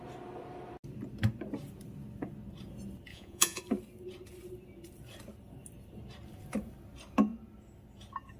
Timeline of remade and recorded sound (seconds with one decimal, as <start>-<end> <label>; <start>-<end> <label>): 0.0-3.1 recorded; 3.1-3.6 remade; 3.6-8.4 recorded